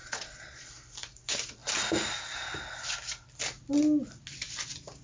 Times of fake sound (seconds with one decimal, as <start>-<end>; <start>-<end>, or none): 0.0-0.7